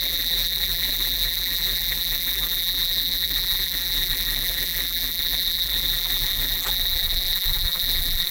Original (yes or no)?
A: no